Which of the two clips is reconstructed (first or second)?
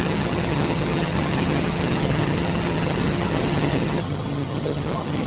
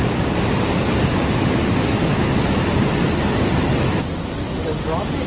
first